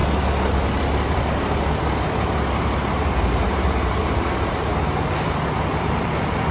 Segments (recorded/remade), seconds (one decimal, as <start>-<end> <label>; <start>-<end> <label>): 0.0-3.9 recorded; 3.9-4.7 remade; 4.7-5.8 recorded; 5.8-6.5 remade